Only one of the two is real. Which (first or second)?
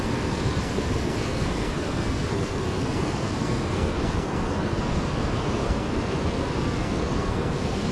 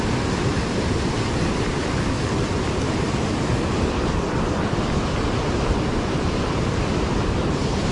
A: second